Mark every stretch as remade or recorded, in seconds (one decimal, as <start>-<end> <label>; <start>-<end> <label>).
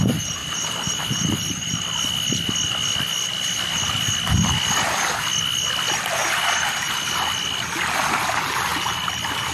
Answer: 0.0-6.2 remade; 6.2-7.8 recorded; 7.8-8.7 remade; 8.7-9.5 recorded